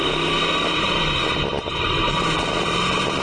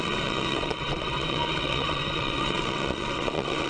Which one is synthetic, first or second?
second